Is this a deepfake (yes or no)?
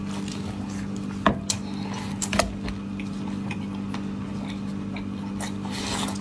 no